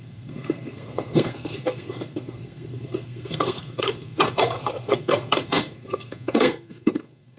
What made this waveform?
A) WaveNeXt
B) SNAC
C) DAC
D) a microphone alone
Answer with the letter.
B